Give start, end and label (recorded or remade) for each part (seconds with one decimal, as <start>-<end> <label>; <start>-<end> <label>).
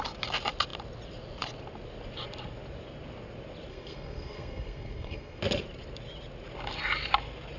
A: 0.0-3.7 recorded; 3.7-5.4 remade; 5.4-7.6 recorded